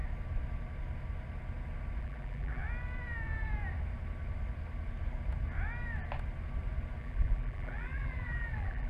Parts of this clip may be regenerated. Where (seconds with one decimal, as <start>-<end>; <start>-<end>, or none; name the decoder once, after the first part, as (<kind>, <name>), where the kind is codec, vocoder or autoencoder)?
2.0-2.6 (vocoder, BigVGAN v2); 7.0-8.9